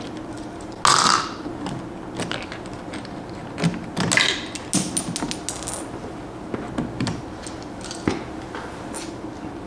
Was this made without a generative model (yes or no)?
yes